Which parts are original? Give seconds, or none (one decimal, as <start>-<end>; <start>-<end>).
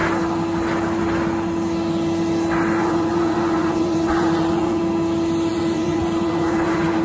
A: 0.0-2.8; 4.8-5.5